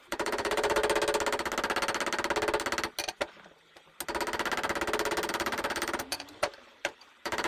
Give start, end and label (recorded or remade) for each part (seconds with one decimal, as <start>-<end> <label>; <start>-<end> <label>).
0.0-0.8 remade; 0.8-5.3 recorded; 5.3-7.5 remade